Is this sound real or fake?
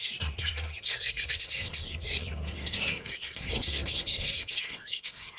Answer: fake